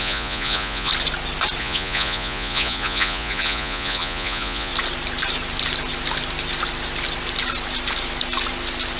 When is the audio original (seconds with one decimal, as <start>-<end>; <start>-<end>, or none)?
0.9-1.6; 4.7-9.0